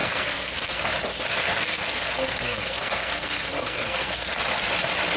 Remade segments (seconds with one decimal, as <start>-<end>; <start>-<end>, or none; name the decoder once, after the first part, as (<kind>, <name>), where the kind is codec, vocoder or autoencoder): 0.0-0.9 (codec, SNAC); 1.3-4.4